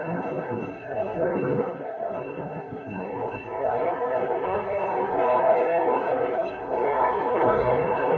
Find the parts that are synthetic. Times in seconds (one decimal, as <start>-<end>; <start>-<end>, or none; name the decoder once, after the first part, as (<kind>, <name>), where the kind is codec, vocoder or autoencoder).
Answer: 0.0-8.2 (codec, SNAC)